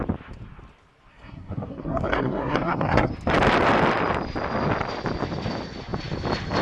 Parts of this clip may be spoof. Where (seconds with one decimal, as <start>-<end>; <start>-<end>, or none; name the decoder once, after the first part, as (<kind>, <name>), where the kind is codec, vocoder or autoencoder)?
1.1-3.1 (codec, SNAC)